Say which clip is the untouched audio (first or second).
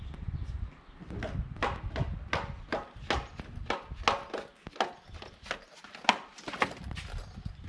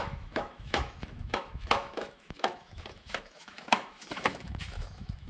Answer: first